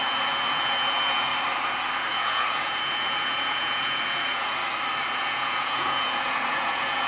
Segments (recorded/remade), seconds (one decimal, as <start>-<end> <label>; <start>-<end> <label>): 0.0-1.3 remade; 1.3-2.1 recorded; 2.1-4.6 remade; 4.6-5.2 recorded; 5.2-7.1 remade